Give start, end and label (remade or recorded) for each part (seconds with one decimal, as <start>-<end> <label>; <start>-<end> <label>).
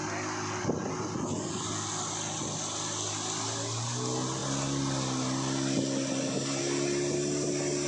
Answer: 0.0-7.9 recorded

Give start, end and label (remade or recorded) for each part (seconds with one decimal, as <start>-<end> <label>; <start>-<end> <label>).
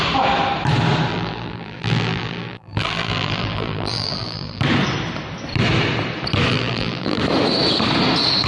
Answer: 0.0-1.1 recorded; 1.1-4.6 remade; 4.6-6.5 recorded; 6.5-7.2 remade; 7.2-8.5 recorded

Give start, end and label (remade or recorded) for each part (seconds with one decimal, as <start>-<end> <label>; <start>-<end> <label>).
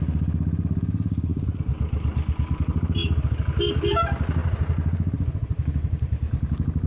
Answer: 0.0-4.4 recorded; 4.4-6.9 remade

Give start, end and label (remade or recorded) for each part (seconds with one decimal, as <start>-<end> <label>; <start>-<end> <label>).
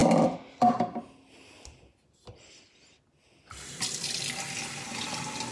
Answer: 0.0-5.5 recorded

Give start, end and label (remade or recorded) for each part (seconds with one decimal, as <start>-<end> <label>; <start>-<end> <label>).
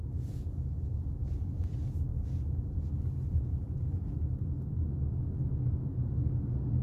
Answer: 0.0-6.8 recorded